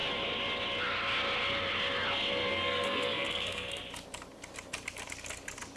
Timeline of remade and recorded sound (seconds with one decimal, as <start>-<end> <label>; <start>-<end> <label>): 0.0-2.5 recorded; 2.5-3.8 remade; 3.8-5.8 recorded